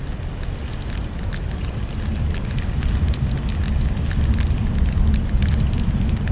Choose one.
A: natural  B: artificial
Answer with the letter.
A